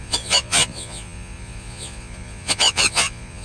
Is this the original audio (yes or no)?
no